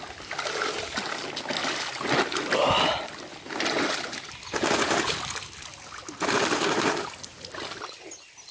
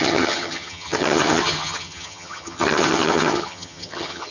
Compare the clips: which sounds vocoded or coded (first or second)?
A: second